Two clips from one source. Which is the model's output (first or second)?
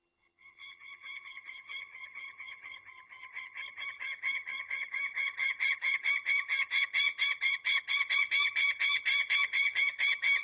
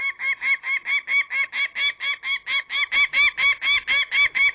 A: first